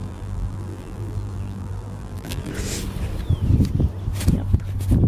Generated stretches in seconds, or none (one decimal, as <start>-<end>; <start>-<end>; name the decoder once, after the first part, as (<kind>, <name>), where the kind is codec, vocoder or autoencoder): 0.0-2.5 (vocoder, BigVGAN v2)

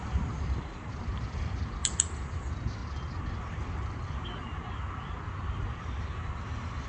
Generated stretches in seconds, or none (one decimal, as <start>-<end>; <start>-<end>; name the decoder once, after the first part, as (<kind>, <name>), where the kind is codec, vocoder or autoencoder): 0.0-2.8 (vocoder, BigVGAN v2)

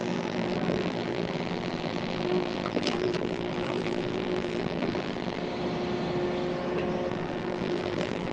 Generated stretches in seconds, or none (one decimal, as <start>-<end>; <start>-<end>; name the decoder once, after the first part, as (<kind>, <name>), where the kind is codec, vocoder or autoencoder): 0.0-5.4 (vocoder, BigVGAN v2); 7.1-8.3